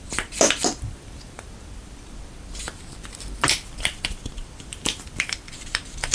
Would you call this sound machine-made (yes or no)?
yes